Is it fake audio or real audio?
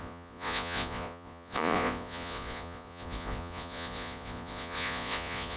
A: fake